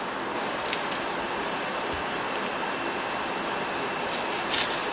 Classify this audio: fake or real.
real